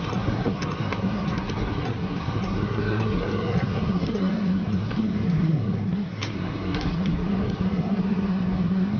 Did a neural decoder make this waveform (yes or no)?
yes